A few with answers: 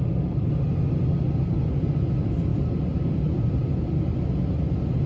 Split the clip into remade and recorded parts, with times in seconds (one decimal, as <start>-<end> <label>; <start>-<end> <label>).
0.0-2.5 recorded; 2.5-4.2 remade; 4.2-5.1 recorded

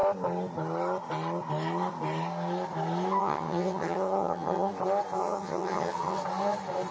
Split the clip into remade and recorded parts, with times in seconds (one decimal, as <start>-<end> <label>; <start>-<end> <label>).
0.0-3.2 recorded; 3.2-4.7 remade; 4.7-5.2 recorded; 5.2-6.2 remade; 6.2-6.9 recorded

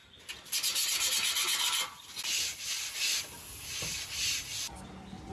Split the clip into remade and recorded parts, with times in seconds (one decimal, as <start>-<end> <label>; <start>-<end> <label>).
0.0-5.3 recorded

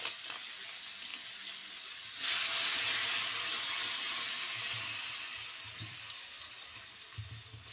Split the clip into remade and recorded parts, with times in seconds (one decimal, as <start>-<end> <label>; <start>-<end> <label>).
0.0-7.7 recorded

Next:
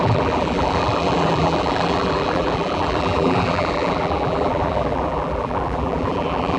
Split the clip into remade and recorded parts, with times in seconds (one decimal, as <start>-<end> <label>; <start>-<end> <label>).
0.0-6.6 remade